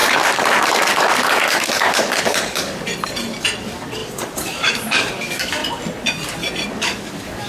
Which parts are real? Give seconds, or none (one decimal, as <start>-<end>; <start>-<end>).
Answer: 2.9-3.6; 5.6-6.7